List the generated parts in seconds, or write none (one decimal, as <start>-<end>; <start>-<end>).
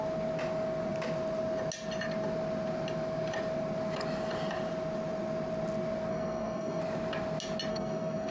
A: 6.1-6.8; 7.7-8.3